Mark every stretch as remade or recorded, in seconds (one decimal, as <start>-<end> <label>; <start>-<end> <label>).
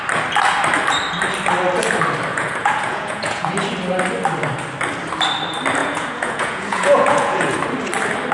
0.0-2.3 recorded; 2.3-3.5 remade; 3.5-5.8 recorded; 5.8-7.5 remade; 7.5-8.3 recorded